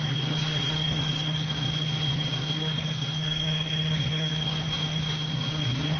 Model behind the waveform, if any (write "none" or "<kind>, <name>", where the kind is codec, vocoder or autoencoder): codec, SNAC